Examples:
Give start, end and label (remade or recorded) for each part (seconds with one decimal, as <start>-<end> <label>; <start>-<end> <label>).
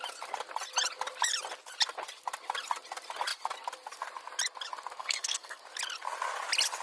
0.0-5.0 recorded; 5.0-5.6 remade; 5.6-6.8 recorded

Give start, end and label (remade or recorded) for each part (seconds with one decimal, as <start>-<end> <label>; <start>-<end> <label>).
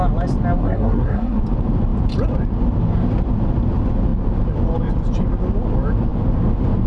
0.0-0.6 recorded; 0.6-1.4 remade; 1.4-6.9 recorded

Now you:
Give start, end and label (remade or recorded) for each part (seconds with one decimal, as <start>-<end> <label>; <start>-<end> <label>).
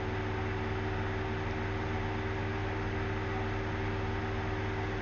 0.0-5.0 recorded